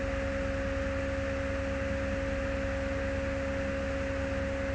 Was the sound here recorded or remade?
recorded